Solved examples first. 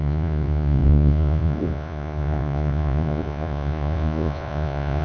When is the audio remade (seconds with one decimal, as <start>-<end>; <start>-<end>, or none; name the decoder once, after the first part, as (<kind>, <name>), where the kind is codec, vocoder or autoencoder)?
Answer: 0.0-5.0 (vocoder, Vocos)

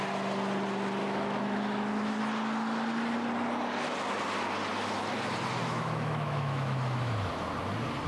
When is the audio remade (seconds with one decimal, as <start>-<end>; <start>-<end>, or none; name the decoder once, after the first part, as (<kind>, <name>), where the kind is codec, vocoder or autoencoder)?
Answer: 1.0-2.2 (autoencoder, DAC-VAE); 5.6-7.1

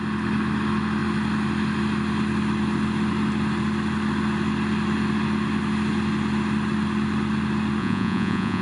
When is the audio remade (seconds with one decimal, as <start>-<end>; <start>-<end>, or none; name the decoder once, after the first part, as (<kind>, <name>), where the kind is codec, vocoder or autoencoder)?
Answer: 7.8-8.6 (vocoder, Vocos)

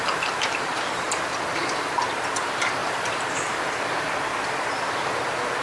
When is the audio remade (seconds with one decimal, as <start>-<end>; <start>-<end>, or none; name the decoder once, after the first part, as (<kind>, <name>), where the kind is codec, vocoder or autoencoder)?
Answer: 0.0-0.7 (vocoder, BigVGAN v2); 2.8-3.8

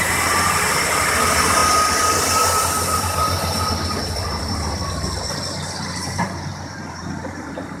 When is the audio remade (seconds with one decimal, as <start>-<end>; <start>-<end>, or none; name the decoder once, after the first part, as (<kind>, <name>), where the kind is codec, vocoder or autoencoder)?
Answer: 0.0-1.6 (vocoder, BigVGAN v2); 2.1-4.8; 5.5-7.8

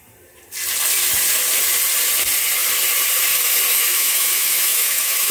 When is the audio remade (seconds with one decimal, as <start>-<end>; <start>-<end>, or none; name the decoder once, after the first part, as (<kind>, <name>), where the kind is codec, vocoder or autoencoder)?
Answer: 3.7-5.3 (autoencoder, DAC-VAE)